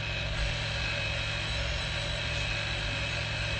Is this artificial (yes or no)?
no